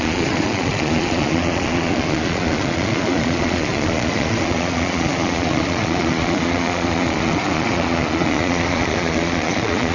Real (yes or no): no